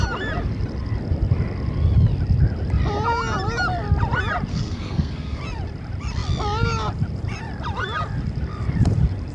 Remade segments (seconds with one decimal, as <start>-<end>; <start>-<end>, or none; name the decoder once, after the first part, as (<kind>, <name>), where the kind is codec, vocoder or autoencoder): 4.5-5.4 (codec, SNAC)